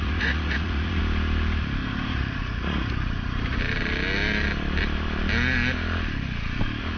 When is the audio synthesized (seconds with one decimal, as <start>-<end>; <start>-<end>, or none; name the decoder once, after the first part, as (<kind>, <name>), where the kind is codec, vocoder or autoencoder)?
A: 0.0-1.0 (vocoder, Vocos); 1.8-3.6